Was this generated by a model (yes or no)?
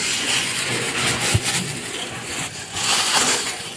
yes